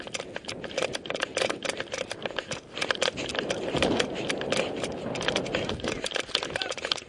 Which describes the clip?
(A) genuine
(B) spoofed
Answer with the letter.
A